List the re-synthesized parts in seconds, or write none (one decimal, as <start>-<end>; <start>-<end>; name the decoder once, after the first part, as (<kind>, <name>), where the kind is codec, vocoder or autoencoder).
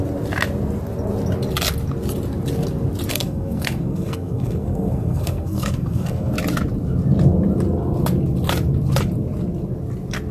3.1-6.3 (codec, SNAC)